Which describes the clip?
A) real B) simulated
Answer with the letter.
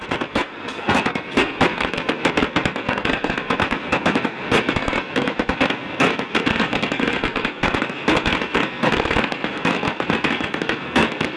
B